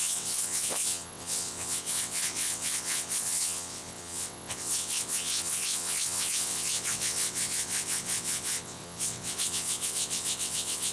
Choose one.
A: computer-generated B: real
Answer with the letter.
A